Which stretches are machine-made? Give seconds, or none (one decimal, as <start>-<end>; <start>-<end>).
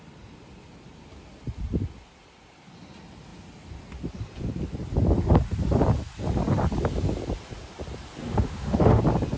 8.2-9.0